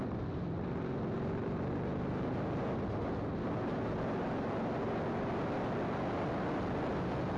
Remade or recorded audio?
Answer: recorded